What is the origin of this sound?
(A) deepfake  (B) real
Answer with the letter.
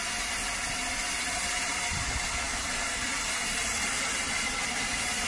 B